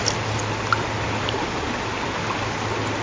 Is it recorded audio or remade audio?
recorded